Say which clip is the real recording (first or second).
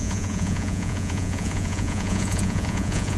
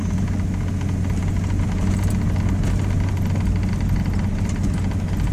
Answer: second